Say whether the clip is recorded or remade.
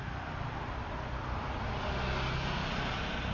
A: recorded